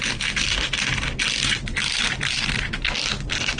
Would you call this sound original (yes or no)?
yes